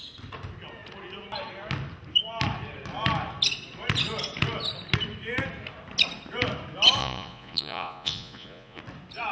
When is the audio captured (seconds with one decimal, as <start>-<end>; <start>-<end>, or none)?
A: 0.0-7.0; 8.8-9.3